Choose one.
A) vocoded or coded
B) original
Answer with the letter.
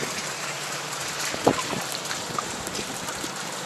A